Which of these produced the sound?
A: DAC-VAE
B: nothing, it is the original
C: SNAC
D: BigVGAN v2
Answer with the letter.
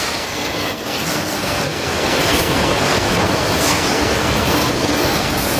C